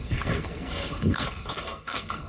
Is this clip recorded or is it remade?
remade